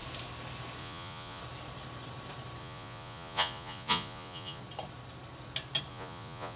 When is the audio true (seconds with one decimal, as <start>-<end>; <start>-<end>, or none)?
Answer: 0.0-0.8; 1.4-2.6; 4.6-5.9